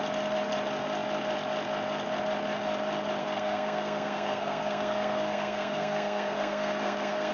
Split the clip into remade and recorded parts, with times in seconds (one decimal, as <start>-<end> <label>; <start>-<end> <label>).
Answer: 0.0-3.2 recorded; 3.2-7.3 remade